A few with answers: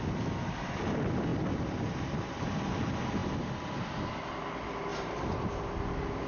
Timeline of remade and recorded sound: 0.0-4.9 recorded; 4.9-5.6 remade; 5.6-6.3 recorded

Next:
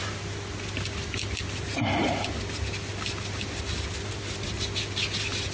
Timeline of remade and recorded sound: 0.0-5.5 recorded

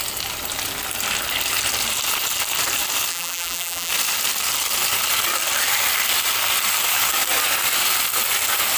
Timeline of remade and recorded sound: 0.0-3.1 recorded; 3.1-3.9 remade; 3.9-8.8 recorded

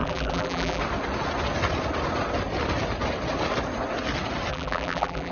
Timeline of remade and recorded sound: 0.0-0.8 remade; 0.8-4.5 recorded; 4.5-5.3 remade